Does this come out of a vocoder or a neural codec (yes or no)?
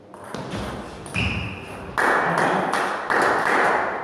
no